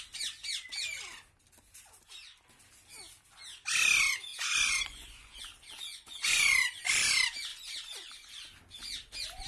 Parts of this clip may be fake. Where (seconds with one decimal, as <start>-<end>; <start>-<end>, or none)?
4.3-5.4; 5.9-6.8; 7.5-8.1